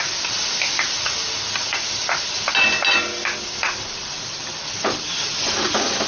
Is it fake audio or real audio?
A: real